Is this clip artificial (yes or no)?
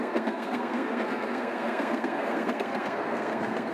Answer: yes